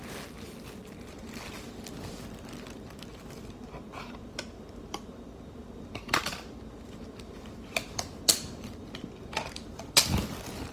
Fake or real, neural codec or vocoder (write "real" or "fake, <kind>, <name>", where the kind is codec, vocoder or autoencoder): real